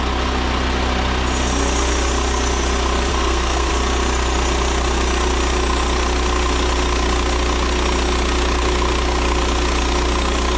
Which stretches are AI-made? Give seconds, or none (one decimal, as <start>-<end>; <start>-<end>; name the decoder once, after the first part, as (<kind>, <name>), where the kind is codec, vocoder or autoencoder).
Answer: 3.1-3.7 (codec, SNAC)